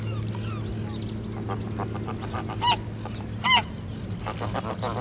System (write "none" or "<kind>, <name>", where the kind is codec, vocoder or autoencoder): none